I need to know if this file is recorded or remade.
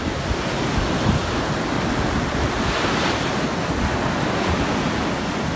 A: recorded